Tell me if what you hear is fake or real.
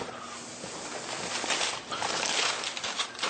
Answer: real